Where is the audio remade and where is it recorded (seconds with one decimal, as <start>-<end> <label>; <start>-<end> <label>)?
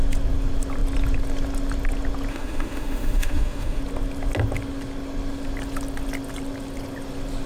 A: 0.0-2.3 recorded; 2.3-3.8 remade; 3.8-7.5 recorded